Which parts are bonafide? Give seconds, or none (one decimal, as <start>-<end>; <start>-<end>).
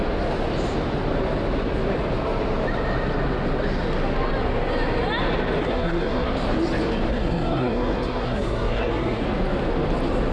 0.0-5.6; 6.3-7.1; 9.2-10.3